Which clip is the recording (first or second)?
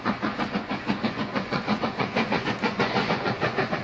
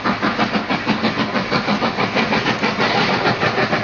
second